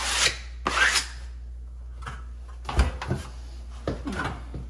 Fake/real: real